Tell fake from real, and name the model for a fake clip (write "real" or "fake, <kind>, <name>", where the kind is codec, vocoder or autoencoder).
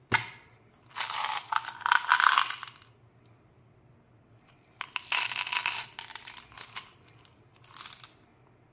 real